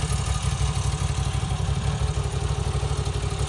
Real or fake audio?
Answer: real